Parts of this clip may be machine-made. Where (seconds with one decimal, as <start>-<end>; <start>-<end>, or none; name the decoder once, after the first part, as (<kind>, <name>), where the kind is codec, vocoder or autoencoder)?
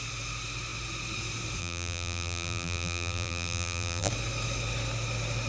1.6-4.1 (vocoder, BigVGAN v2)